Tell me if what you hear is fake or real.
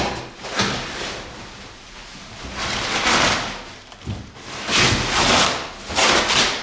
real